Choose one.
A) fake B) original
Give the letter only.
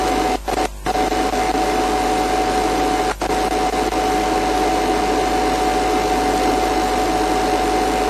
A